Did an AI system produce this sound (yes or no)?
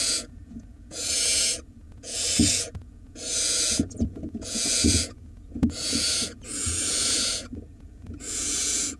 yes